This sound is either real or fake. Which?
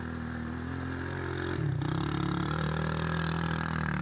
real